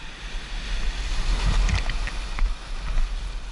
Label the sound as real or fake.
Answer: real